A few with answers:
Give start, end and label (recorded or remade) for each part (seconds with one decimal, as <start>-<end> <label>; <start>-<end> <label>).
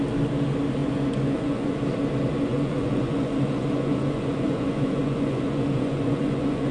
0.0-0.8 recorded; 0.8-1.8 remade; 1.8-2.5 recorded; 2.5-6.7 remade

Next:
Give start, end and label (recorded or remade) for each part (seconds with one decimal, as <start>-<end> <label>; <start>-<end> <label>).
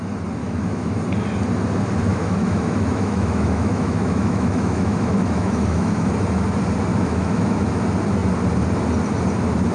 0.0-0.4 recorded; 0.4-1.0 remade; 1.0-2.1 recorded; 2.1-6.1 remade; 6.1-6.9 recorded; 6.9-7.8 remade; 7.8-9.7 recorded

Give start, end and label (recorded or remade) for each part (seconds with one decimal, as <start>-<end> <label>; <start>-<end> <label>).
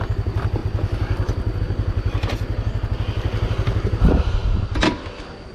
0.0-5.5 recorded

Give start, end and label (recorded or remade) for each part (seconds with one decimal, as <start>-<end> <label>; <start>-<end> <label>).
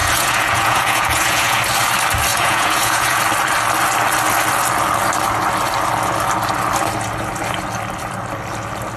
0.0-1.6 remade; 1.6-2.3 recorded; 2.3-3.2 remade; 3.2-9.0 recorded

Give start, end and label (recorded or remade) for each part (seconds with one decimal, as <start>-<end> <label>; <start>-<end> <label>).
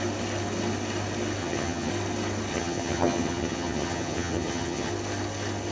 0.0-1.4 recorded; 1.4-1.9 remade; 1.9-2.5 recorded; 2.5-4.9 remade; 4.9-5.7 recorded